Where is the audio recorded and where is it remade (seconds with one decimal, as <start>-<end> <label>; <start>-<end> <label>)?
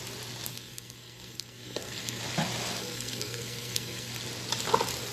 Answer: 0.0-0.5 recorded; 0.5-2.2 remade; 2.2-2.8 recorded; 2.8-4.1 remade; 4.1-5.1 recorded